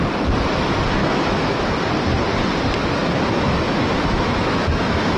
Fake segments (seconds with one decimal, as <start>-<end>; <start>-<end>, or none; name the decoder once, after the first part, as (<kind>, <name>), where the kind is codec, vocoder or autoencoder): 1.0-1.7 (autoencoder, DAC-VAE); 3.0-5.2